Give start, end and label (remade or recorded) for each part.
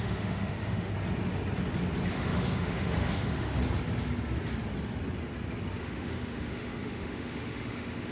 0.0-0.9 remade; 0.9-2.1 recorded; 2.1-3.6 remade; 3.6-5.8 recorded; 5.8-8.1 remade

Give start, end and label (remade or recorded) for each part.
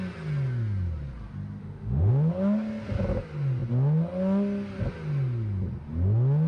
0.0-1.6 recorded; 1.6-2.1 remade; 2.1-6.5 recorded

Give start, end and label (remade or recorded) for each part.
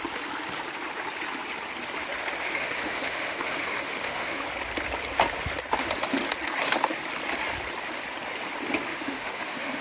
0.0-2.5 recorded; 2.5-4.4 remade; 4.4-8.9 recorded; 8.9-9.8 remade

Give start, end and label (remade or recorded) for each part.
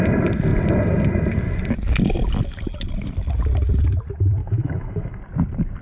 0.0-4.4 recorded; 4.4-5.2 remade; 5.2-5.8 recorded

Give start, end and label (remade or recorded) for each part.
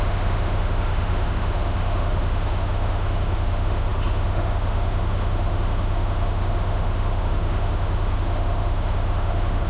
0.0-9.7 remade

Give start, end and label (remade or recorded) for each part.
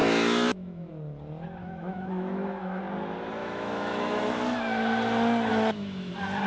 0.0-0.9 remade; 0.9-1.6 recorded; 1.6-2.8 remade; 2.8-3.4 recorded; 3.4-4.3 remade; 4.3-5.5 recorded; 5.5-6.1 remade; 6.1-6.5 recorded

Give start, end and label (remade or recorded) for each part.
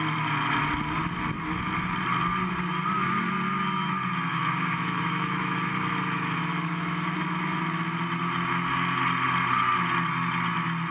0.0-4.3 recorded; 4.3-7.6 remade; 7.6-10.9 recorded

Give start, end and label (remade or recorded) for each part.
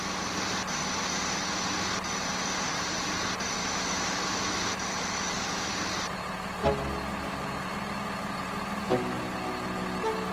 0.0-3.6 recorded; 3.6-5.7 remade; 5.7-10.3 recorded